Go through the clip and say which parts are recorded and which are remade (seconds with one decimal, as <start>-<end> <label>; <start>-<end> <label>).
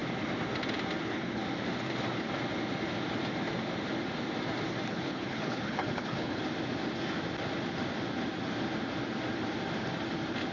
0.0-1.0 recorded; 1.0-1.4 remade; 1.4-4.9 recorded; 4.9-6.4 remade; 6.4-10.5 recorded